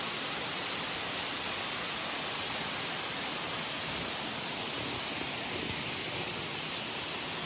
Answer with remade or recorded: recorded